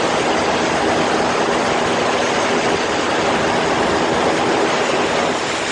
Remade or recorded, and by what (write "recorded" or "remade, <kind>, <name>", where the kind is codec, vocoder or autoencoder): recorded